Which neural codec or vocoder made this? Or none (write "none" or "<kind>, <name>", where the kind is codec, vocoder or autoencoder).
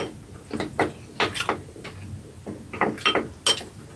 none